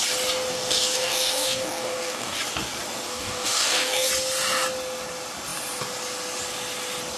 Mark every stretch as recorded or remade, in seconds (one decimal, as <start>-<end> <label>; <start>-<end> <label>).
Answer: 0.0-0.5 recorded; 0.5-2.4 remade; 2.4-3.1 recorded; 3.1-4.1 remade; 4.1-7.2 recorded